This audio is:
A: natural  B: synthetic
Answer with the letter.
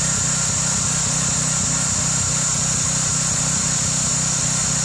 A